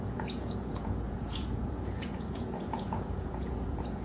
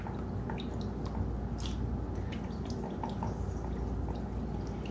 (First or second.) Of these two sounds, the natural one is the second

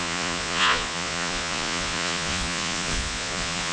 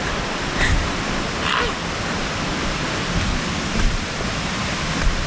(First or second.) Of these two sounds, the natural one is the second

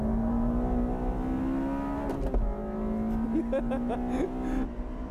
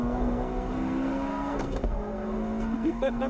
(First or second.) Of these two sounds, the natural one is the first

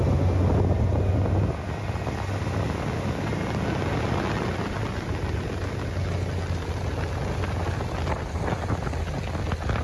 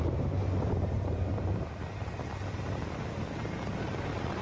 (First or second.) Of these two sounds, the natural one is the first